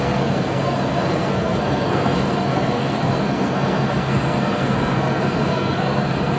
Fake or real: fake